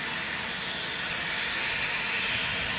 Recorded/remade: recorded